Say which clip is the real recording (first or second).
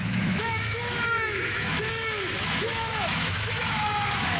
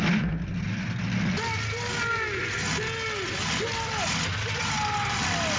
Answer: second